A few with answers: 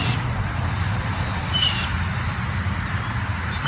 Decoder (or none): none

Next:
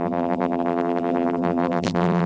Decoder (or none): vocoder, BigVGAN v2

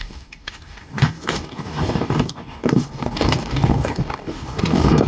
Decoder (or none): codec, DAC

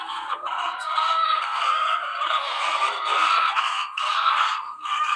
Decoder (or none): codec, SNAC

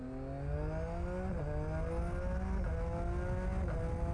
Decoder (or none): none